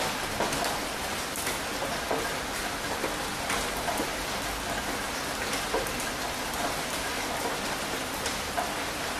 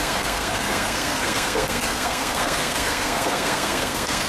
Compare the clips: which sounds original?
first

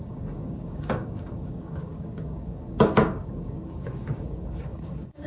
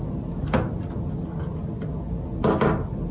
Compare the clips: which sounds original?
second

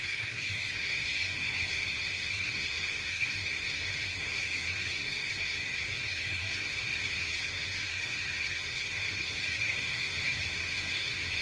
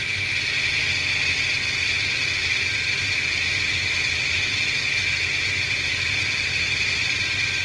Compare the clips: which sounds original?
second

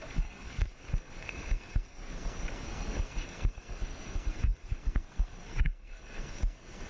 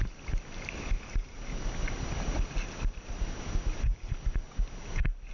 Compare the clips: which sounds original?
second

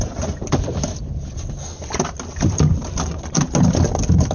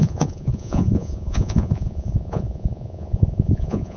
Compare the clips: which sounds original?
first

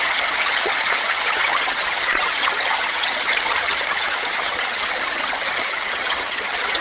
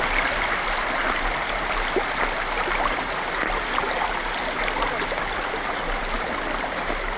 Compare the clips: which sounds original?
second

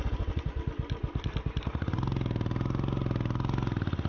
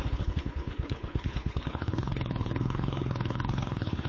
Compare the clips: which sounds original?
first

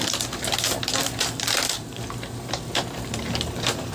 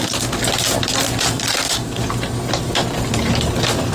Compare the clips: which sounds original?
second